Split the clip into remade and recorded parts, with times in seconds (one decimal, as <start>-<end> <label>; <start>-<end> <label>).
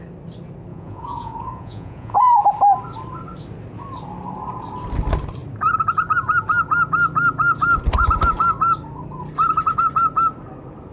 0.0-0.7 recorded; 0.7-2.4 remade; 2.4-10.9 recorded